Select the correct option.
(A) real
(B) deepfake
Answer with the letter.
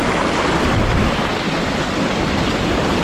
A